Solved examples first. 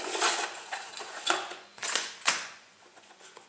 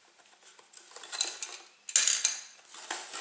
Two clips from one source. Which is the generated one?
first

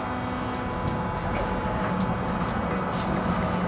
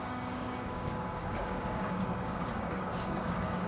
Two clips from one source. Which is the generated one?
second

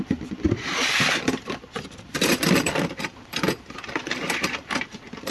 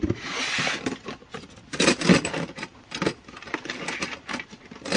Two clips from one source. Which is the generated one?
first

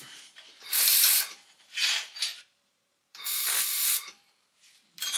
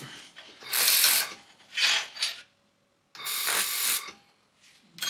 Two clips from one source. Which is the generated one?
first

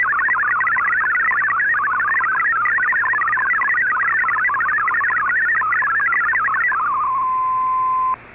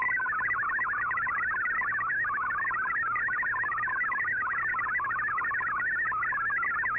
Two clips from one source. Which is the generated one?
second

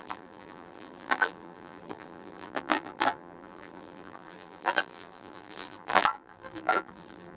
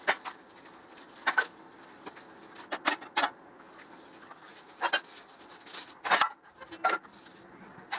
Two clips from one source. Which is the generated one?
first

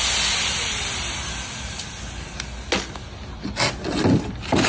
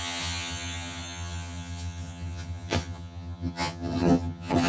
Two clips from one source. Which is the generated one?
second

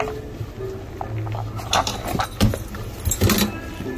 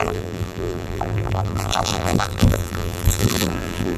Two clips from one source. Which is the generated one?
second